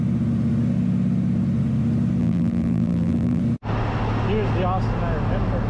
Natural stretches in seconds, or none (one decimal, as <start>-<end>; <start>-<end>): 0.0-2.2; 3.4-5.7